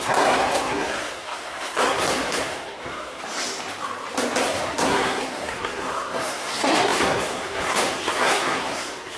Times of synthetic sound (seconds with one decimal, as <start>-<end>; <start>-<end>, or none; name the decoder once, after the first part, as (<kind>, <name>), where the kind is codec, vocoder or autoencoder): 0.0-3.2 (codec, SNAC); 4.4-9.2